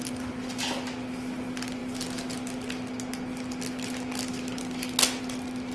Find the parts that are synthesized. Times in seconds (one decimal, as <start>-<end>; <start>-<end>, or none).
none